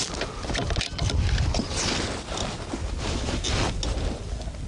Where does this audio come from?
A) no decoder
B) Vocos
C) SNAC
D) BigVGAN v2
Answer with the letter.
A